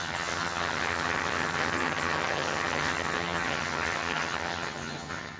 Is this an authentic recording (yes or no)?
no